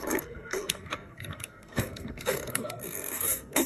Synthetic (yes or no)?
yes